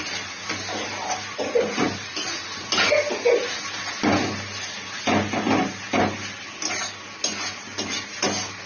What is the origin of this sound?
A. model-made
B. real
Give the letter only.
B